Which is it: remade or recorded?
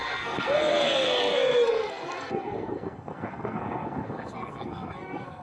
remade